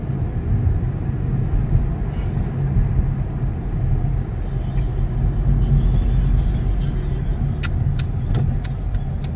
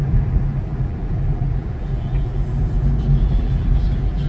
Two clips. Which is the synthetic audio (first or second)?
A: second